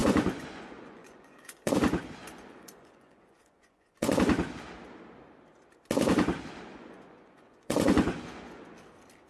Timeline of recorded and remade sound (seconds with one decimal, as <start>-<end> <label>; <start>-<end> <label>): 0.0-1.7 remade; 1.7-2.2 recorded; 2.2-4.1 remade; 4.1-6.7 recorded; 6.7-8.6 remade; 8.6-9.3 recorded